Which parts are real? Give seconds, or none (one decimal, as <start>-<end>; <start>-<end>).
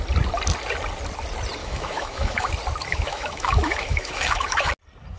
0.0-1.6; 2.5-2.9; 4.7-5.2